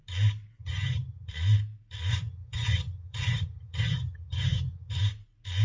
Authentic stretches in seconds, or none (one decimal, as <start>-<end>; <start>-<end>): 0.0-0.6; 1.3-2.1; 5.0-5.6